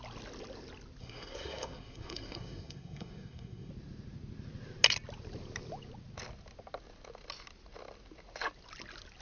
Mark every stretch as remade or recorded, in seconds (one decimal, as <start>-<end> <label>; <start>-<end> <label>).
0.0-1.0 recorded; 1.0-3.7 remade; 3.7-9.2 recorded